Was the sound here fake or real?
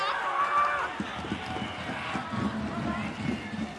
real